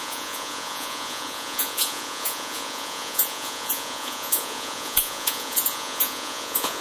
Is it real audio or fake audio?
fake